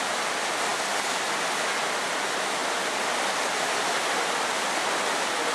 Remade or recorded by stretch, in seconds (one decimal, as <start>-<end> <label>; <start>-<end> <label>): 0.0-5.5 recorded